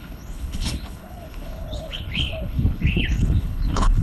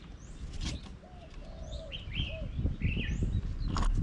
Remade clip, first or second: first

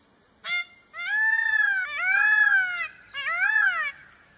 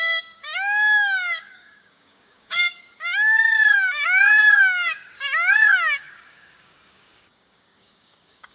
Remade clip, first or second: second